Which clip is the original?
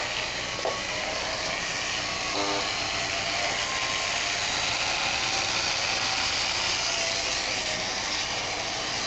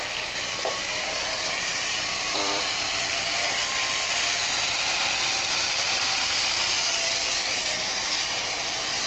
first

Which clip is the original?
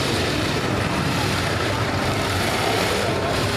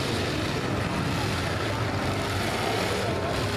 second